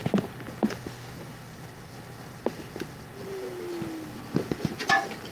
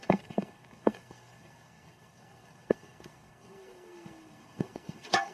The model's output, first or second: second